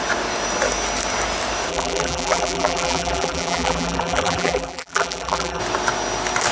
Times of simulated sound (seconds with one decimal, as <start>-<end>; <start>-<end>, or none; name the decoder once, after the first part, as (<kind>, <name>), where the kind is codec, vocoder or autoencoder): 1.7-5.6 (vocoder, BigVGAN v2)